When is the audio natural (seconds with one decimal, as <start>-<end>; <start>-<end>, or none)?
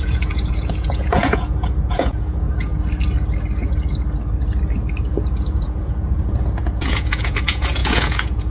2.7-5.1